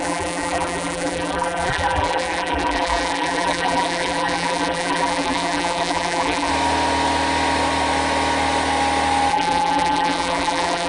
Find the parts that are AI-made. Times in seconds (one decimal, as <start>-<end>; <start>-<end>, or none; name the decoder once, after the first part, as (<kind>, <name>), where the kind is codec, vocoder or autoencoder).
0.0-6.5 (vocoder, BigVGAN v2); 9.3-10.9